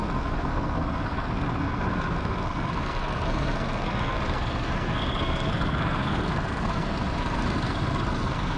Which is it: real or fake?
fake